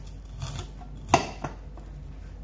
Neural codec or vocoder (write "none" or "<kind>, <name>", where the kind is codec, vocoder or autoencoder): none